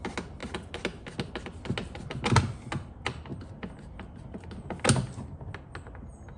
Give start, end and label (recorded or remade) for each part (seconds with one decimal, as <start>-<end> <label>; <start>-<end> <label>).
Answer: 0.0-6.4 recorded